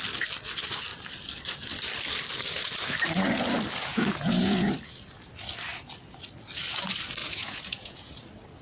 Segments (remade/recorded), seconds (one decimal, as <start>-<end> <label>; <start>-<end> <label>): 0.0-3.9 recorded; 3.9-4.7 remade; 4.7-7.2 recorded; 7.2-8.1 remade; 8.1-8.6 recorded